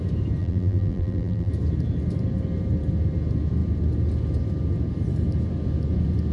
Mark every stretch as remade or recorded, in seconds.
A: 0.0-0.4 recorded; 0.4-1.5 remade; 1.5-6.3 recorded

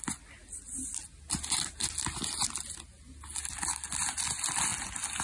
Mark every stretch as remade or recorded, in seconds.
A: 0.0-5.2 recorded

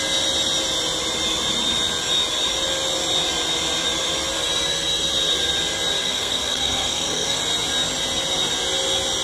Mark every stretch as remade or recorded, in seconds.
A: 0.0-6.0 recorded; 6.0-7.4 remade; 7.4-9.2 recorded

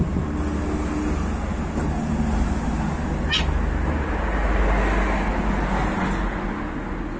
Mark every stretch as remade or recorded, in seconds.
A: 0.0-7.2 recorded

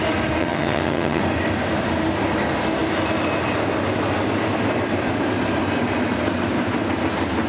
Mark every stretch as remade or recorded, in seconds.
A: 0.0-0.4 recorded; 0.4-1.2 remade; 1.2-7.5 recorded

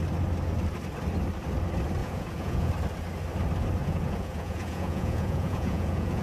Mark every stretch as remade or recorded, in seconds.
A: 0.0-2.0 recorded; 2.0-2.7 remade; 2.7-3.8 recorded; 3.8-6.2 remade

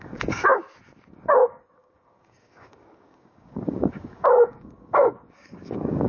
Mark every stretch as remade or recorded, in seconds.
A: 0.0-0.5 remade; 0.5-1.1 recorded; 1.1-6.1 remade